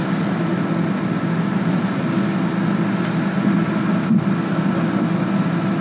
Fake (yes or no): no